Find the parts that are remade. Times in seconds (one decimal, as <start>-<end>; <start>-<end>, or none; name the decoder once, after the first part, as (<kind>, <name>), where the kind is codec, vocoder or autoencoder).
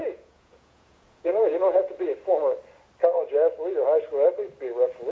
0.0-2.0 (vocoder, Vocos)